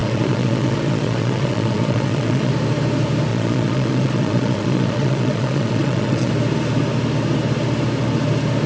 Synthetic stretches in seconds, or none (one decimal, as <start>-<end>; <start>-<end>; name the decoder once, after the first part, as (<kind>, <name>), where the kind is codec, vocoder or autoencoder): 0.0-2.5 (vocoder, Vocos); 3.3-6.3